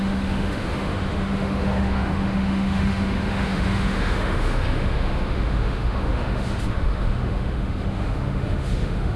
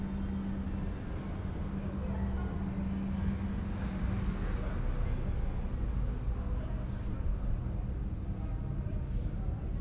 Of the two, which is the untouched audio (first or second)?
second